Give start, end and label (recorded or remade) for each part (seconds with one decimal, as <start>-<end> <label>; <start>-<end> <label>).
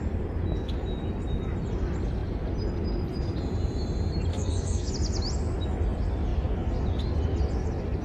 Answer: 0.0-4.3 recorded; 4.3-4.9 remade; 4.9-8.0 recorded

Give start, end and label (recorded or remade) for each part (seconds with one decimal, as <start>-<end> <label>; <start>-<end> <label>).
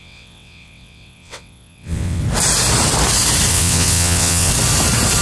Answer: 0.0-2.2 remade; 2.2-3.5 recorded; 3.5-4.5 remade; 4.5-5.2 recorded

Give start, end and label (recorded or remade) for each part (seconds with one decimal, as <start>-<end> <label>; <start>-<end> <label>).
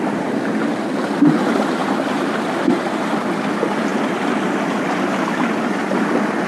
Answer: 0.0-6.5 recorded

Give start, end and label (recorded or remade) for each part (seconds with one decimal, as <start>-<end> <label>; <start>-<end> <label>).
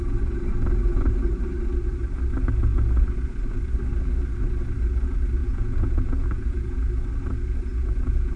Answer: 0.0-5.4 recorded; 5.4-6.9 remade; 6.9-7.7 recorded; 7.7-8.4 remade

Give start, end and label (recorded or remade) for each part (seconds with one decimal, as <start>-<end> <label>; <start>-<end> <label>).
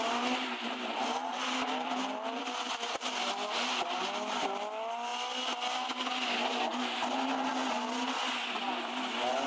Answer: 0.0-1.3 recorded; 1.3-2.4 remade; 2.4-9.5 recorded